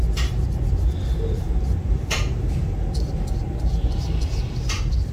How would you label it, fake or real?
real